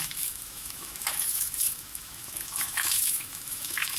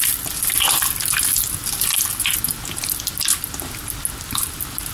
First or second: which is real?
second